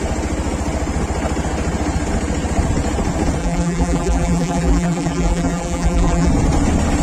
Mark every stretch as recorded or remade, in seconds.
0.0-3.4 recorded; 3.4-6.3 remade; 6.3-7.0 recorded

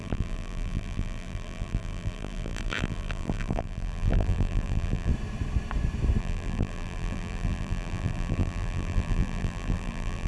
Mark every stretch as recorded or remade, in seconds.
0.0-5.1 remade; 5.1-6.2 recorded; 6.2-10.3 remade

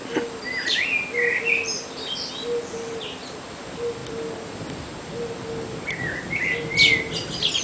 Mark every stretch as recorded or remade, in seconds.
0.0-7.6 recorded